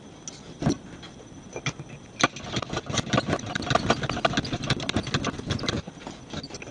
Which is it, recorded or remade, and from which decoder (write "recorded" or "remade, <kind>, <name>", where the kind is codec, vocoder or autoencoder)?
recorded